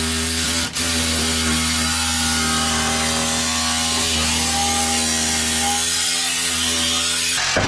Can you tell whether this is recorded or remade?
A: recorded